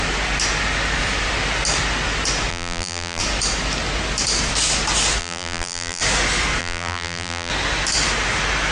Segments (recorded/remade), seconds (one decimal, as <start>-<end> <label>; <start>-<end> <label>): 0.0-2.5 recorded; 2.5-3.2 remade; 3.2-5.2 recorded; 5.2-6.0 remade; 6.0-6.6 recorded; 6.6-7.5 remade; 7.5-8.7 recorded